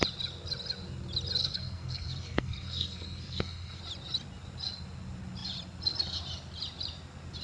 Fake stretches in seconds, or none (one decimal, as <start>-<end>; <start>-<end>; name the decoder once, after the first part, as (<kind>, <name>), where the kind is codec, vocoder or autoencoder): 1.4-3.8 (codec, SNAC)